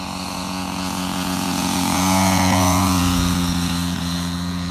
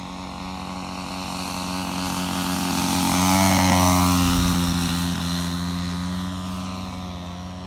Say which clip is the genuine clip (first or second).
second